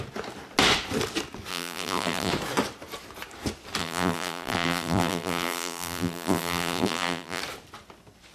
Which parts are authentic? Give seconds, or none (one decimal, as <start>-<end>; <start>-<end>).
0.0-1.5; 2.3-3.8; 7.4-8.3